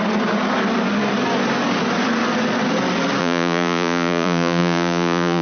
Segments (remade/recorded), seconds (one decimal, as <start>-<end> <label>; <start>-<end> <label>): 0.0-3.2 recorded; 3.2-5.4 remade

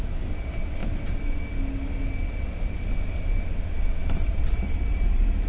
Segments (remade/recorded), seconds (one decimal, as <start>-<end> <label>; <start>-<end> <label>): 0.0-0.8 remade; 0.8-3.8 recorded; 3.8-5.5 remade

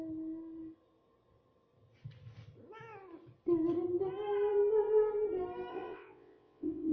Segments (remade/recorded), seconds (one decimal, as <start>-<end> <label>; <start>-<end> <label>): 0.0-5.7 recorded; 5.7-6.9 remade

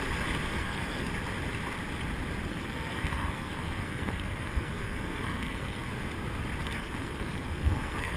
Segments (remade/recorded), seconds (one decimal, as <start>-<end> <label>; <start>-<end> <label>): 0.0-0.5 recorded; 0.5-1.1 remade; 1.1-2.5 recorded; 2.5-5.9 remade; 5.9-6.6 recorded; 6.6-8.2 remade